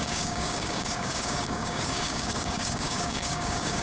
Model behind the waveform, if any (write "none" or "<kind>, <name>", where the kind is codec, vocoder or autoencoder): codec, DAC